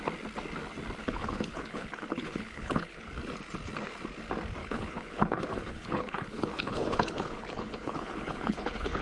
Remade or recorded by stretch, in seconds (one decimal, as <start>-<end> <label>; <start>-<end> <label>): 0.0-1.0 recorded; 1.0-3.1 remade; 3.1-4.6 recorded; 4.6-9.0 remade